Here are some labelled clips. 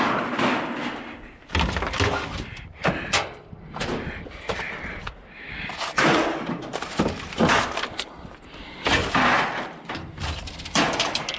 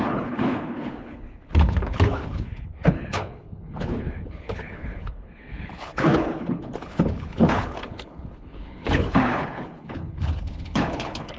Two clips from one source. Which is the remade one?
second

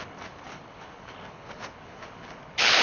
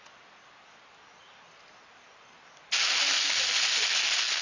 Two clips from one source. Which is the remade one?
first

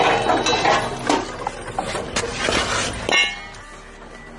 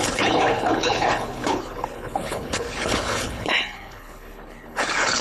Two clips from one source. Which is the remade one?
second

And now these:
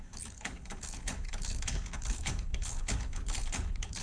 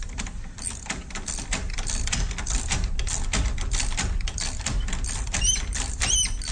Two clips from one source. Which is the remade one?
first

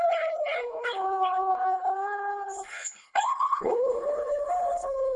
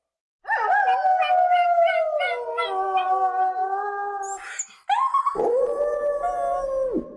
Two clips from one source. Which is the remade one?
first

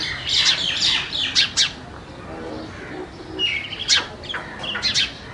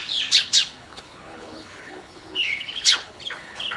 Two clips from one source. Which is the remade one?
second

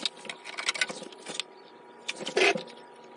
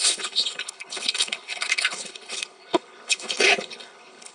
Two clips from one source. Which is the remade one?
second